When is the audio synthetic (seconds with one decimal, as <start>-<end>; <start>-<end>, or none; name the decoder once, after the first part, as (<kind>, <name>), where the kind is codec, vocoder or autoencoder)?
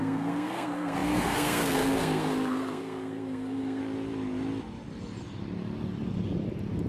0.0-3.8 (codec, SNAC)